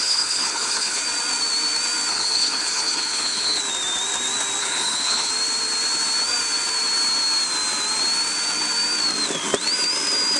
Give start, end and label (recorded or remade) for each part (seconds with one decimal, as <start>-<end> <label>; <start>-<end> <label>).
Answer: 0.0-1.0 remade; 1.0-2.1 recorded; 2.1-3.6 remade; 3.6-4.6 recorded; 4.6-5.3 remade; 5.3-10.4 recorded

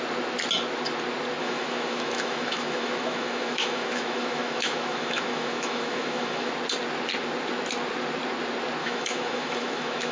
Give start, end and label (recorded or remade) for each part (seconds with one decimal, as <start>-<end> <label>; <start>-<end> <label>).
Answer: 0.0-1.4 recorded; 1.4-6.5 remade; 6.5-8.8 recorded; 8.8-10.1 remade

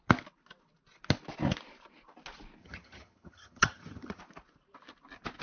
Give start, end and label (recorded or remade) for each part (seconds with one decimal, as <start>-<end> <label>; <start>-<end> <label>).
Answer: 0.0-2.6 recorded; 2.6-4.2 remade; 4.2-5.4 recorded